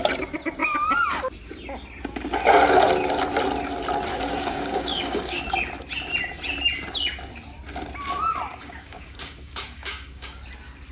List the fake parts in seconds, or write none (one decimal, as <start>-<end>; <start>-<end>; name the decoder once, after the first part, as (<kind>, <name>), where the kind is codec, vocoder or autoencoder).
4.1-5.4 (codec, DAC); 8.5-10.4